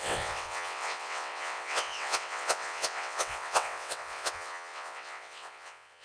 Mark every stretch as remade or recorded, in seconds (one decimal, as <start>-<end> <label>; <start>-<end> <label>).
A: 0.0-6.0 remade